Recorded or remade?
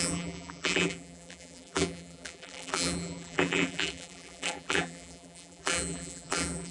remade